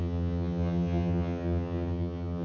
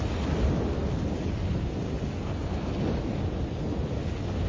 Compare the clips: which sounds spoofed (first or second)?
first